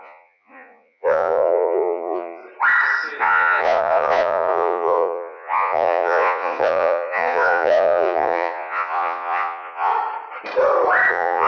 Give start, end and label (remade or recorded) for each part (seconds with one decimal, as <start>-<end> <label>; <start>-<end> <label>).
0.0-2.4 remade; 2.4-3.2 recorded; 3.2-9.9 remade; 9.9-11.1 recorded; 11.1-11.5 remade

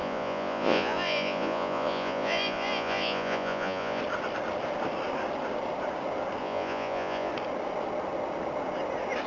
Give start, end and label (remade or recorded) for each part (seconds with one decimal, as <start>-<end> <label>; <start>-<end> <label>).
0.0-4.0 remade; 4.0-6.4 recorded; 6.4-7.3 remade; 7.3-9.3 recorded

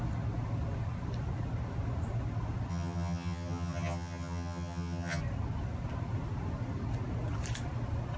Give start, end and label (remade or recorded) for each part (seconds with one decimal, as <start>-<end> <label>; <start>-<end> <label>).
0.0-2.7 recorded; 2.7-5.2 remade; 5.2-8.2 recorded

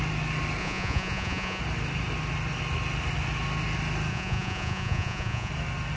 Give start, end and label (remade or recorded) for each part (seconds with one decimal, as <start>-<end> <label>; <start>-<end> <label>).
0.0-0.6 recorded; 0.6-1.6 remade; 1.6-4.1 recorded; 4.1-5.5 remade; 5.5-6.0 recorded

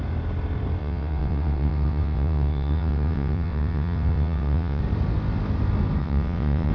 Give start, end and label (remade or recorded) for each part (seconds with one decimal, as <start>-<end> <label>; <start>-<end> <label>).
0.0-0.8 recorded; 0.8-4.8 remade; 4.8-6.0 recorded; 6.0-6.7 remade

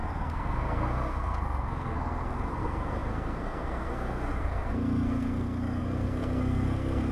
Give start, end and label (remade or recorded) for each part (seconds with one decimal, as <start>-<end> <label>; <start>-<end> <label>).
0.0-7.1 remade

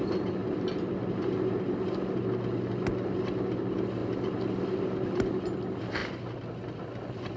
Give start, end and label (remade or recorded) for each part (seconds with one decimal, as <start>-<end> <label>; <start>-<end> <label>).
0.0-7.4 recorded

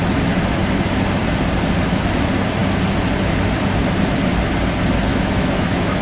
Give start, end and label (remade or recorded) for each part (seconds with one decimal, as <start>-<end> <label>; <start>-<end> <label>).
0.0-5.1 recorded; 5.1-6.0 remade